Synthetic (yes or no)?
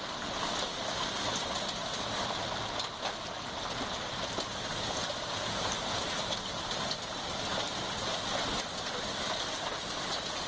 no